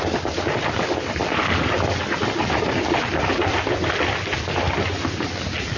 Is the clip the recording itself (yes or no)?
yes